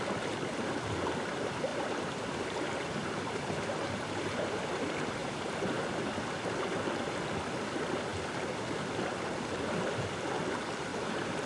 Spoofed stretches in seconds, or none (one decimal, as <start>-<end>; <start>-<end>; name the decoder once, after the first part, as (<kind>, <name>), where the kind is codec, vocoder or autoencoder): 1.7-4.8 (vocoder, BigVGAN v2); 5.2-6.0; 10.9-11.5